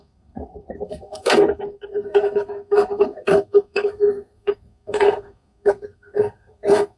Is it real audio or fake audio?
fake